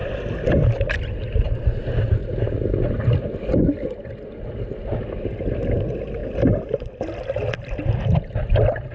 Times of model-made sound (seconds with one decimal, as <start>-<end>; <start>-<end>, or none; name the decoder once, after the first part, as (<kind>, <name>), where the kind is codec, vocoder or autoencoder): none